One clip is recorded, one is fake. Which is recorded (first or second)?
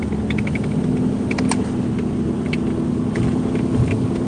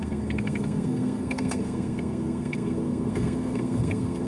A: first